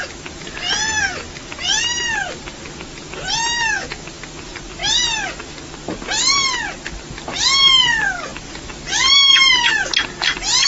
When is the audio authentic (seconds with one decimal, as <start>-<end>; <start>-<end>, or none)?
0.0-8.3; 9.5-10.7